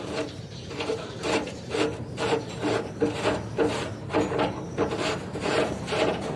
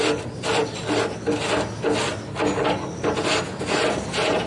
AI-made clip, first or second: first